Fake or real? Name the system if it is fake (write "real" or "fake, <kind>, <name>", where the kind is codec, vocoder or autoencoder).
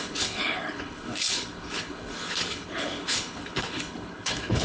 fake, codec, HILCodec